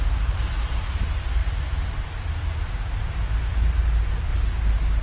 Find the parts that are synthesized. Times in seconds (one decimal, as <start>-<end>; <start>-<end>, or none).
none